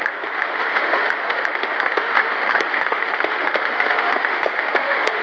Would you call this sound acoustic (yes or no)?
no